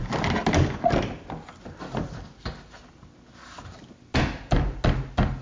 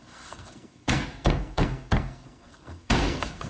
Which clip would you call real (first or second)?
first